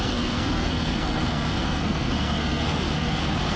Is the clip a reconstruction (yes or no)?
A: yes